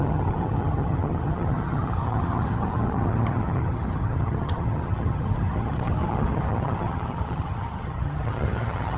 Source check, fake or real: fake